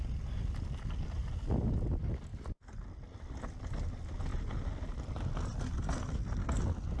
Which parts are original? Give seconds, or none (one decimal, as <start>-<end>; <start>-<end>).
0.0-7.0